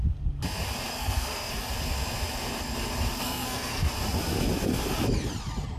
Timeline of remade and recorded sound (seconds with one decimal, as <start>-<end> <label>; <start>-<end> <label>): 0.0-0.9 recorded; 0.9-1.5 remade; 1.5-3.2 recorded; 3.2-3.9 remade; 3.9-5.8 recorded